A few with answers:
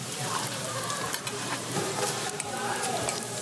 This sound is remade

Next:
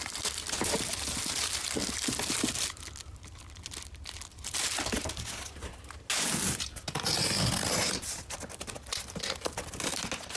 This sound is recorded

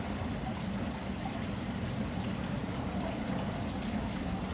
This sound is recorded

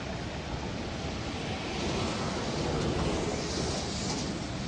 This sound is recorded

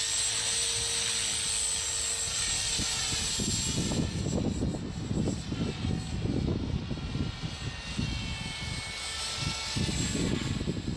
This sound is recorded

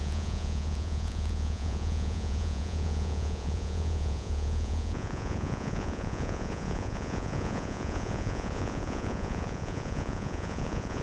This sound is remade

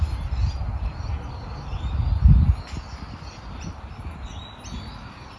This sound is recorded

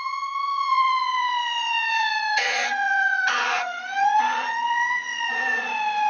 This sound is remade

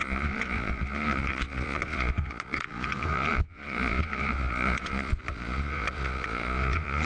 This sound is remade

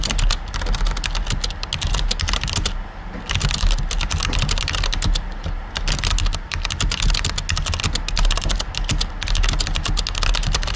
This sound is recorded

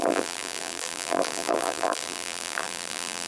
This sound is remade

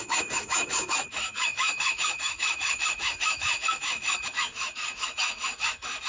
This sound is remade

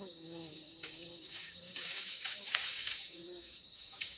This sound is remade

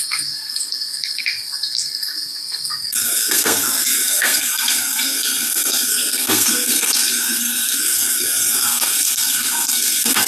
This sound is remade